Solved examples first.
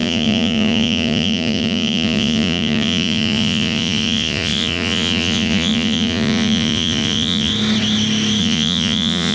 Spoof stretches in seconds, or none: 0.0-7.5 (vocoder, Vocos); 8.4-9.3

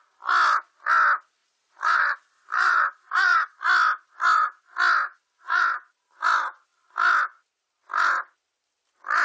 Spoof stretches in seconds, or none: 1.4-3.6 (vocoder, BigVGAN v2); 5.1-5.6

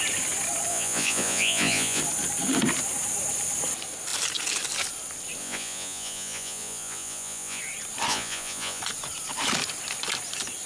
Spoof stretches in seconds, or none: 0.7-2.0 (vocoder, Vocos); 5.4-7.6; 8.1-8.8

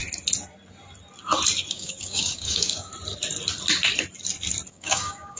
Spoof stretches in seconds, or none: 1.7-2.9 (codec, DAC); 4.7-5.4

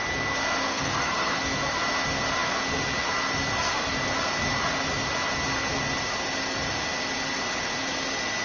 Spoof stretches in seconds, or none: 0.7-1.4 (codec, SNAC)

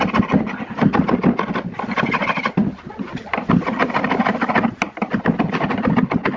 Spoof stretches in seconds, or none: none